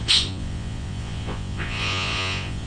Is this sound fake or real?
fake